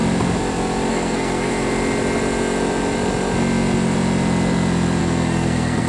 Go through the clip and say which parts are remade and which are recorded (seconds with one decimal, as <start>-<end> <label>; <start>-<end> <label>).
0.0-0.9 recorded; 0.9-1.5 remade; 1.5-5.0 recorded; 5.0-5.9 remade